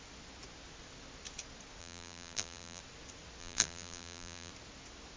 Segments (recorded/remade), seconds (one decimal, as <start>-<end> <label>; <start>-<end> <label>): 0.0-1.8 recorded; 1.8-2.8 remade; 2.8-3.4 recorded; 3.4-4.5 remade; 4.5-5.2 recorded